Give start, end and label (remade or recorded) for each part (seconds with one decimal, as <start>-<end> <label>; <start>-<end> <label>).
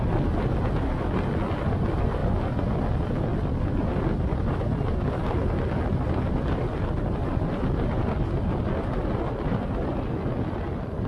0.0-9.5 recorded; 9.5-10.0 remade; 10.0-11.1 recorded